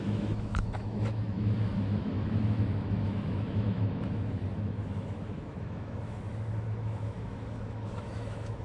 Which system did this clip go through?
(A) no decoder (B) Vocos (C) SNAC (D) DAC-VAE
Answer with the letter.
D